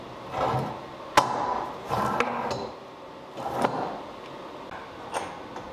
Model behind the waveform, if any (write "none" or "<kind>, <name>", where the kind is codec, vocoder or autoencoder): none